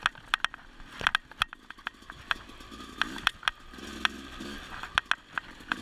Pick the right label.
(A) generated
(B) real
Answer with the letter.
B